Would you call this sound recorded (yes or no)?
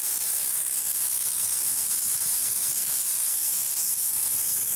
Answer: no